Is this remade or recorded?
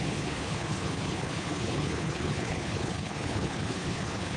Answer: remade